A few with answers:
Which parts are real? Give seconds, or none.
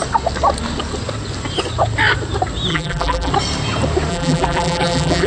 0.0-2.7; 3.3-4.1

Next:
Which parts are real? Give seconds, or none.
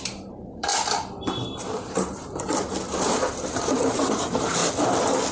0.7-1.6; 4.6-5.3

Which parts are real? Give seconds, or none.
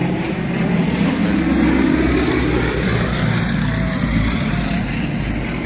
1.2-4.0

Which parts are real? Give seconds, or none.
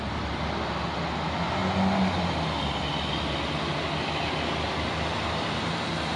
1.6-5.3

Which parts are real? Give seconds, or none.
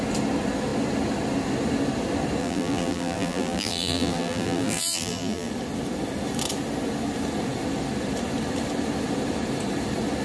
0.0-2.4; 5.5-10.2